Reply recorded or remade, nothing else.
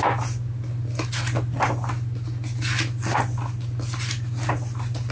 recorded